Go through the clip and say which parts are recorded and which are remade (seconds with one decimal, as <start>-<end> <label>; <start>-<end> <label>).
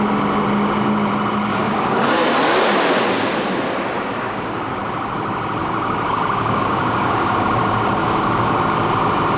0.0-1.5 recorded; 1.5-3.0 remade; 3.0-4.1 recorded; 4.1-4.8 remade; 4.8-5.6 recorded; 5.6-7.6 remade; 7.6-8.0 recorded; 8.0-8.6 remade; 8.6-9.4 recorded